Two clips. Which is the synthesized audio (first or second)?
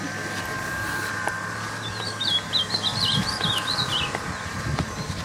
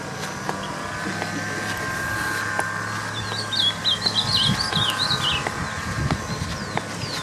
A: first